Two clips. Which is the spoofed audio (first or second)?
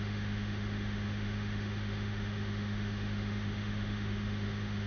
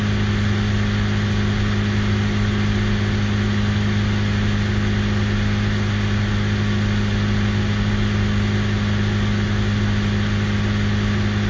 first